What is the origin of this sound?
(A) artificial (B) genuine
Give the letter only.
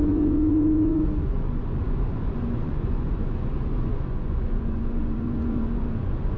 A